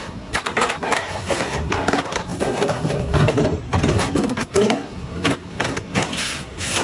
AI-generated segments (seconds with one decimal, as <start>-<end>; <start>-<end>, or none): 0.0-3.4; 3.9-6.8